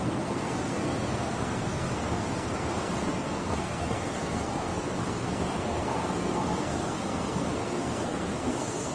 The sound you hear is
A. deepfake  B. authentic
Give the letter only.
A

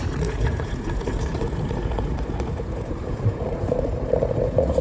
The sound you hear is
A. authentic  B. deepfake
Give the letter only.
B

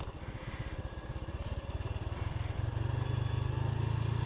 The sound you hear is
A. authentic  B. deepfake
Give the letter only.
A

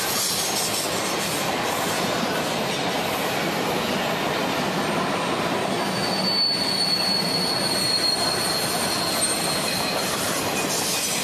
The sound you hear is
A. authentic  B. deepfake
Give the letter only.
A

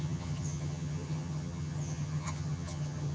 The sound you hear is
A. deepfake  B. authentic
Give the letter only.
A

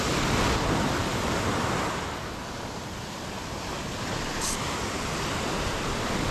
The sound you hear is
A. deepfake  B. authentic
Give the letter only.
B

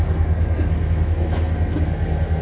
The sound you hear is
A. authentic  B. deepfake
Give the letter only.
B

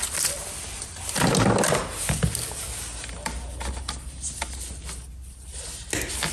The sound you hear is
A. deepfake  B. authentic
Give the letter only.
B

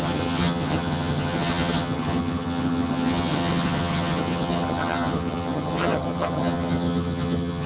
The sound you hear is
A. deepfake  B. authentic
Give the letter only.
A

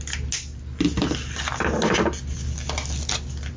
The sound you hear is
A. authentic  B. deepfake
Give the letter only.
A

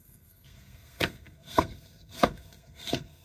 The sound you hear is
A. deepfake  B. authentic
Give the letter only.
A